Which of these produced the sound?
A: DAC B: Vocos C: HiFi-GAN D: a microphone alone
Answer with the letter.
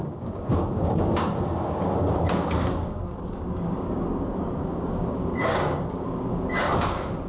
A